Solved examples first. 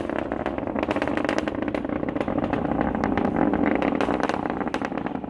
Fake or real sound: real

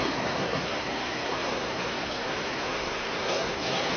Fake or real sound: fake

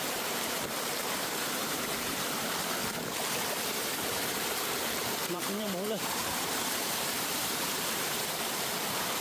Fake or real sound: fake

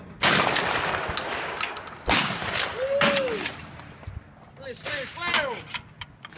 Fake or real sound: real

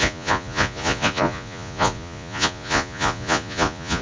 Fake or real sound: fake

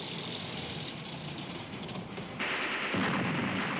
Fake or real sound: real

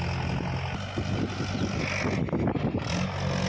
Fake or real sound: real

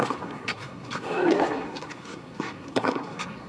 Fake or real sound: fake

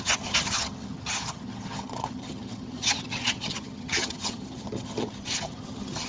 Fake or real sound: fake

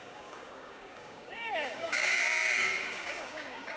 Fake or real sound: fake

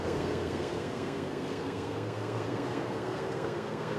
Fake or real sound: fake